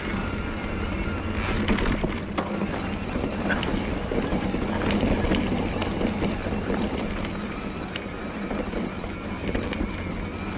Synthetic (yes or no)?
no